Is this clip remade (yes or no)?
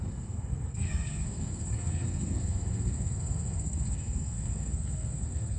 yes